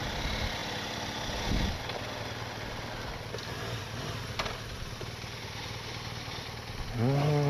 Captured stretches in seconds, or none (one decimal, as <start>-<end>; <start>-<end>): 0.0-7.5